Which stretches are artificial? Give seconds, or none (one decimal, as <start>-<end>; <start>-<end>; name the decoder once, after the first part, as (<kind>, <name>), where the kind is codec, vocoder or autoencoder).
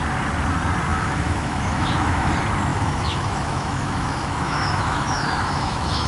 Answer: 0.9-2.3 (autoencoder, DAC-VAE); 2.7-6.1